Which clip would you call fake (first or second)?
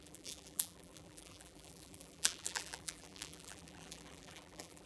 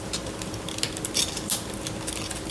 first